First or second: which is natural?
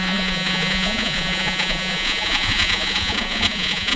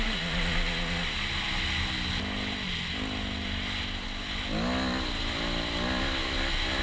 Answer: second